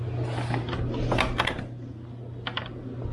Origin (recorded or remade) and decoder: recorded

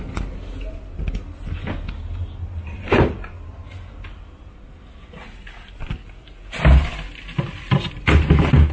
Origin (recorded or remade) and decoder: recorded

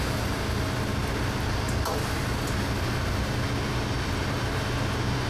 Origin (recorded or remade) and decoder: recorded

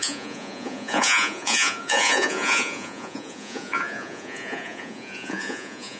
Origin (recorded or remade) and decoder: remade, vocoder, Vocos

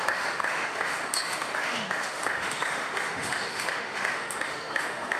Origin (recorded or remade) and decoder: remade, autoencoder, DAC-VAE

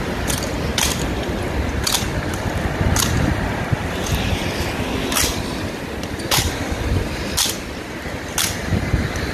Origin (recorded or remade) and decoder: recorded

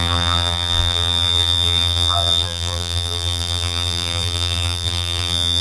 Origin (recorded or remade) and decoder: remade, vocoder, BigVGAN v2